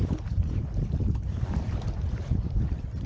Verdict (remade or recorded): remade